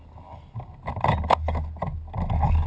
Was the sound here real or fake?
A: real